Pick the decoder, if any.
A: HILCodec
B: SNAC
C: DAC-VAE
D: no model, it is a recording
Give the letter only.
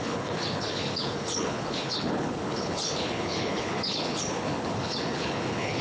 A